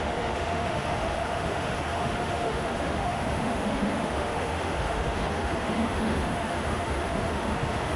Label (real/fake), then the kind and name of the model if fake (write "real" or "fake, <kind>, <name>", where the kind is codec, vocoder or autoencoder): fake, autoencoder, DAC-VAE